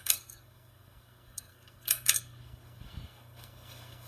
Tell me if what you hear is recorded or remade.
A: remade